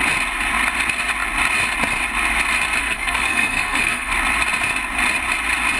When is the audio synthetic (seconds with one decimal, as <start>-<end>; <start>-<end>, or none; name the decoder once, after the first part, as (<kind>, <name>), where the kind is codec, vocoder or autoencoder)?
2.8-4.1 (codec, SNAC)